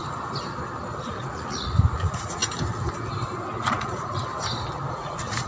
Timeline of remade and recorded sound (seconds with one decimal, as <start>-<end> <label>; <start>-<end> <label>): 0.0-1.1 recorded; 1.1-2.4 remade; 2.4-3.7 recorded; 3.7-4.3 remade; 4.3-4.9 recorded; 4.9-5.5 remade